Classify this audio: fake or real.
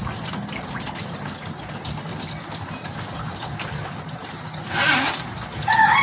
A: real